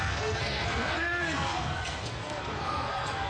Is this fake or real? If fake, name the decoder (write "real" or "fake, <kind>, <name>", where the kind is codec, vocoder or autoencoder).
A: fake, codec, SNAC